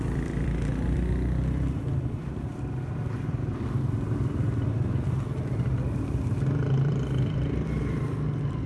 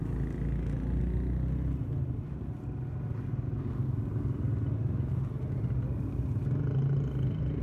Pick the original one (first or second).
second